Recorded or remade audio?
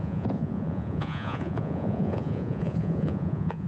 remade